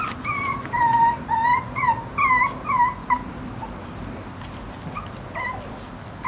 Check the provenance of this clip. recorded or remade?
recorded